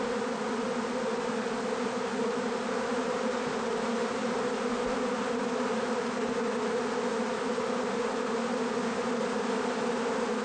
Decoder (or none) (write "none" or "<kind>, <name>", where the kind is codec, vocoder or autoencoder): none